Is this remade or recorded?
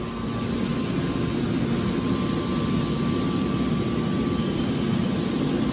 recorded